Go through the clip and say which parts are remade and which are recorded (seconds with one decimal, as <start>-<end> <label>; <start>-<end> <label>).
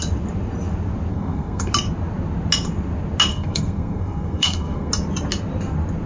0.0-1.1 recorded; 1.1-1.7 remade; 1.7-3.3 recorded; 3.3-4.9 remade; 4.9-6.1 recorded